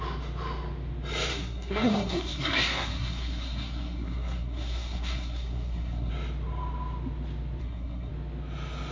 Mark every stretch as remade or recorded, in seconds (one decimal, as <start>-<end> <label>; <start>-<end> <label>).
0.0-1.3 recorded; 1.3-6.1 remade; 6.1-7.6 recorded; 7.6-8.1 remade; 8.1-8.9 recorded